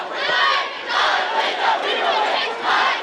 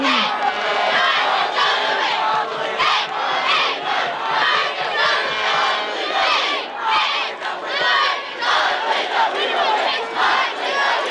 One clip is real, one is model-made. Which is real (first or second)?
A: second